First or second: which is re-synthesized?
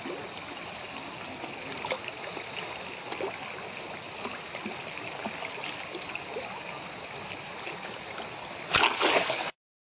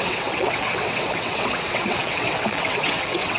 second